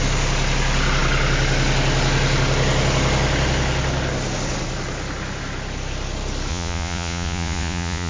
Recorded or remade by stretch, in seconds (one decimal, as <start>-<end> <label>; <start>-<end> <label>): 0.0-6.5 recorded; 6.5-8.1 remade